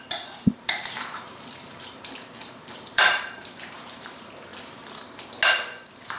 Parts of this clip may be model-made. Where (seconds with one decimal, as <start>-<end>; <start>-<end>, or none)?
0.0-4.5; 5.8-6.2